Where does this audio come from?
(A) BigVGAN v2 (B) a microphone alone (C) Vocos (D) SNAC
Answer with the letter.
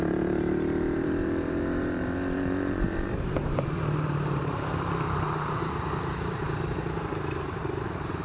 A